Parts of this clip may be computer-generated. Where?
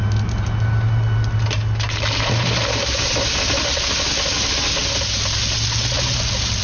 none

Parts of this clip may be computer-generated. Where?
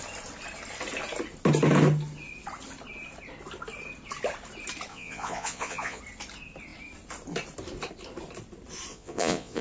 4.9-6.0 (vocoder, Vocos); 8.9-9.6